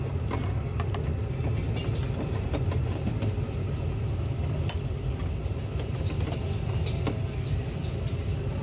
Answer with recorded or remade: recorded